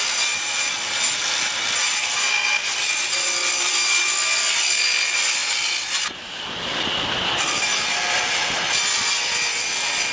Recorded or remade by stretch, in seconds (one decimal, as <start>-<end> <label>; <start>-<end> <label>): 0.0-10.1 recorded